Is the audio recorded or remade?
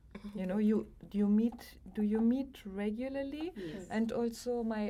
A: recorded